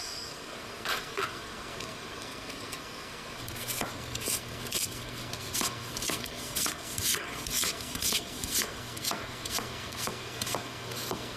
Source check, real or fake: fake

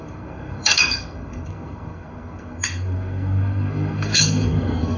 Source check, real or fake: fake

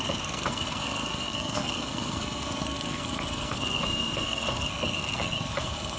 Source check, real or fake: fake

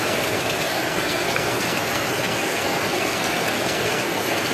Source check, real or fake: fake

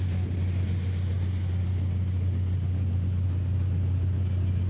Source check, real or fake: real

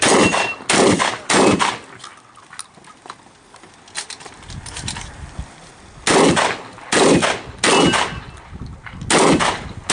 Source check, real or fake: real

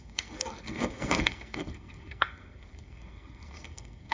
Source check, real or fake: fake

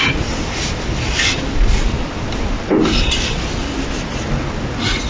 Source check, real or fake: real